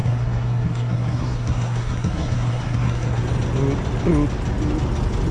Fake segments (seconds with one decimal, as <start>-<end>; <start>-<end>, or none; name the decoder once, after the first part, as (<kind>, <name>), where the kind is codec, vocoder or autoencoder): 0.0-3.2 (codec, SNAC)